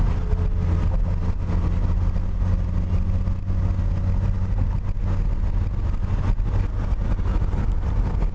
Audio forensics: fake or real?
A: real